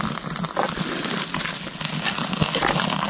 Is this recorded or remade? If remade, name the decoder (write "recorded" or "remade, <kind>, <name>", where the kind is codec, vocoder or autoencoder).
recorded